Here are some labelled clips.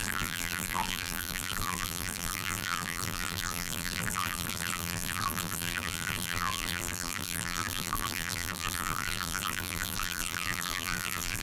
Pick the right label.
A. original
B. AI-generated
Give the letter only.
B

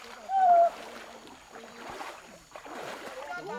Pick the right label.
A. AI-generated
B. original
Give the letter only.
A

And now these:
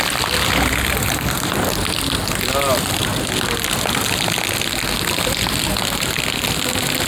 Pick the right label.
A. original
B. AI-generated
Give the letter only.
A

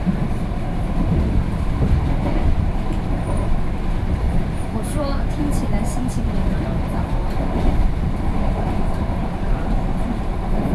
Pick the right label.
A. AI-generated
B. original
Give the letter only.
A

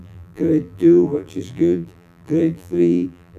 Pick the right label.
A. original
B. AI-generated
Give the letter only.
B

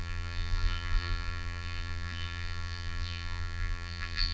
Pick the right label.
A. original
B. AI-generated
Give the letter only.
B